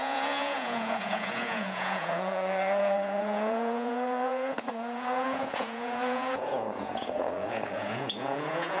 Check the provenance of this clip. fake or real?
fake